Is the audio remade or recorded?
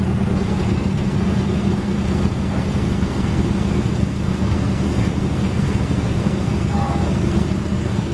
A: remade